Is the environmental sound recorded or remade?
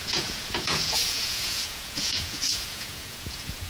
remade